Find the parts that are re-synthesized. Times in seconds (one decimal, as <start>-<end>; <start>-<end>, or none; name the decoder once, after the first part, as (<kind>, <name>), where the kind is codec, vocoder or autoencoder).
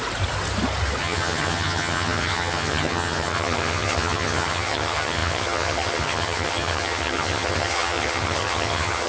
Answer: 1.0-9.1 (vocoder, HiFi-GAN)